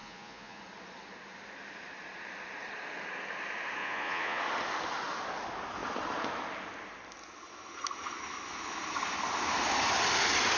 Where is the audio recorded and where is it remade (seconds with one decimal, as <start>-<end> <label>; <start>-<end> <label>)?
0.0-0.6 remade; 0.6-3.8 recorded; 3.8-4.4 remade; 4.4-10.6 recorded